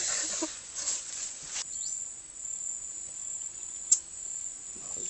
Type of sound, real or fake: fake